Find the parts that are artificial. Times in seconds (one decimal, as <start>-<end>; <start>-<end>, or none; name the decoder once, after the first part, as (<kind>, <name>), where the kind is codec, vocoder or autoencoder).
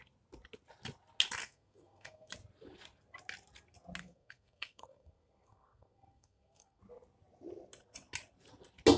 1.4-2.3 (codec, SNAC); 4.0-6.8